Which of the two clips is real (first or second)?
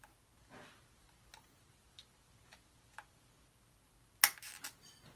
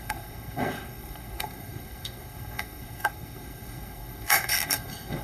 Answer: first